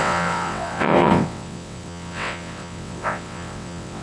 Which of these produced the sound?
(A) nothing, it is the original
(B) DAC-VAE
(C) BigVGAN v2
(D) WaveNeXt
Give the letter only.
D